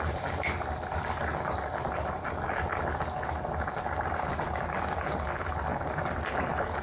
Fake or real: real